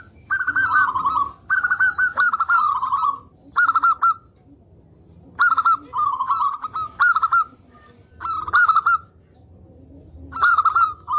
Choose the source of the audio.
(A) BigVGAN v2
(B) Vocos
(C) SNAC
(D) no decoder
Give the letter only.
D